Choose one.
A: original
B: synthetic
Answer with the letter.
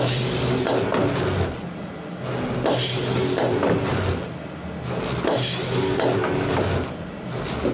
A